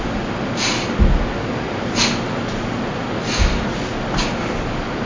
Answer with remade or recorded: recorded